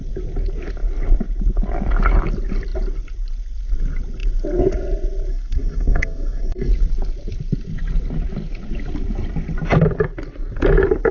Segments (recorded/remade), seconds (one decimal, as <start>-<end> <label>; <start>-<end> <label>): 0.0-5.3 recorded; 5.3-6.7 remade; 6.7-11.1 recorded